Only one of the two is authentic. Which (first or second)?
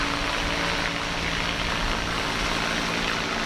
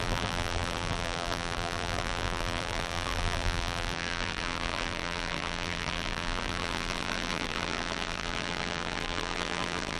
first